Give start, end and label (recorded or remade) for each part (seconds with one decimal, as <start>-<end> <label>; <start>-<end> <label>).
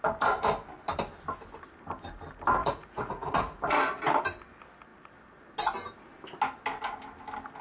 0.0-2.6 recorded; 2.6-3.6 remade; 3.6-7.6 recorded